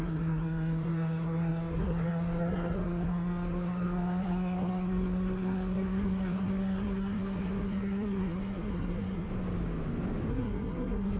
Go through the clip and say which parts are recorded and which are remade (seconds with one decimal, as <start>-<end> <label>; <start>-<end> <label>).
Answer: 0.0-9.3 remade; 9.3-10.3 recorded; 10.3-11.2 remade